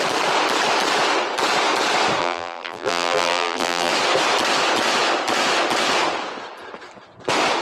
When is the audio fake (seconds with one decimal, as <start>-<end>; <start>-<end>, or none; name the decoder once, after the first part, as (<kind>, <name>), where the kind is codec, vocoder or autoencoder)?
2.2-3.9 (vocoder, BigVGAN v2)